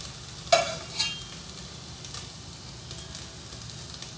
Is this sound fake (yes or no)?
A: no